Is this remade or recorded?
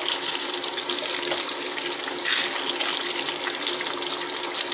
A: recorded